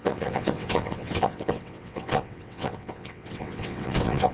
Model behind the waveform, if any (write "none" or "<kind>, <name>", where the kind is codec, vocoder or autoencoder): vocoder, WaveNeXt